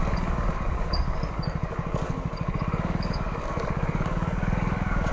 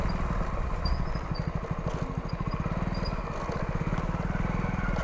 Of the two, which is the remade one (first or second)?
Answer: first